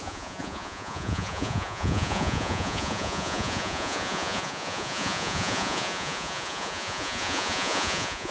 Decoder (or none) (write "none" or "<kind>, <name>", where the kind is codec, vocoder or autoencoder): vocoder, Vocos